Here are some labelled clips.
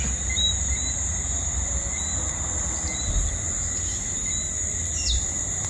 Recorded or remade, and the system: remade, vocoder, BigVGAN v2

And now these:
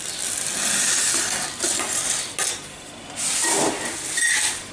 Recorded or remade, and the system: recorded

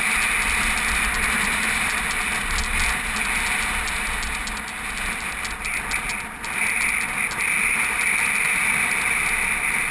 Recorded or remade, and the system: recorded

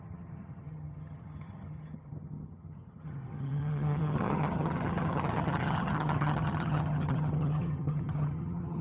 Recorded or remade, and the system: remade, vocoder, HiFi-GAN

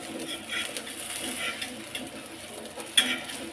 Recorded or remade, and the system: recorded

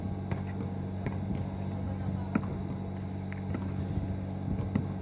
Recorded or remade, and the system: recorded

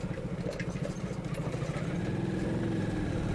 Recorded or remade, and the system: recorded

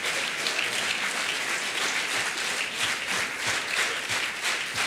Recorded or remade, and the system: recorded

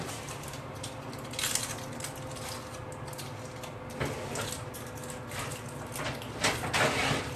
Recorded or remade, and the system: recorded